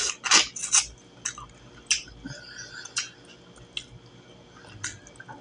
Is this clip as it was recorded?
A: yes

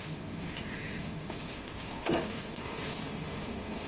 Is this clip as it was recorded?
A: no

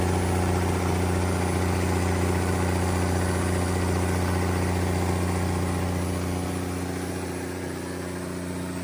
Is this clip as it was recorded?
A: yes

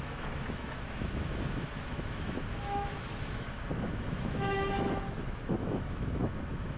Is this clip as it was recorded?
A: no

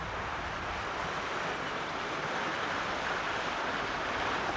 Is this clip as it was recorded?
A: yes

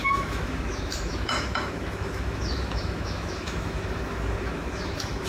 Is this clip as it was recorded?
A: no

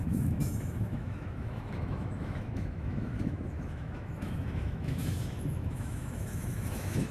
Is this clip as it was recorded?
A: no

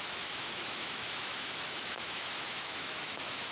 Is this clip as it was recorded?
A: no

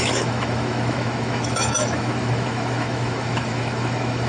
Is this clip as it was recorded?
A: no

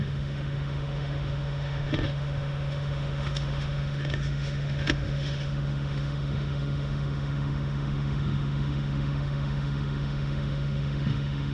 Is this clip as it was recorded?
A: no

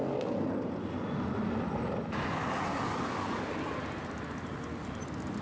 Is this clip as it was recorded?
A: yes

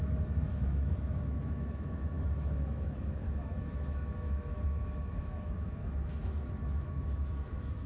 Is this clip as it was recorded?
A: no